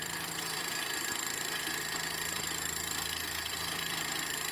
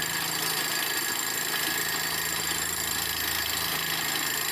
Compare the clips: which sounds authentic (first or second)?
second